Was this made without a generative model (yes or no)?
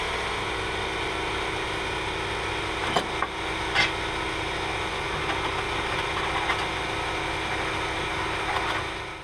yes